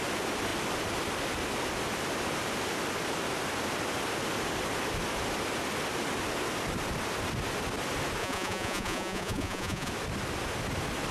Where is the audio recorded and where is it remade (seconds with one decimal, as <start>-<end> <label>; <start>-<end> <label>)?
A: 0.0-8.2 recorded; 8.2-9.9 remade; 9.9-11.1 recorded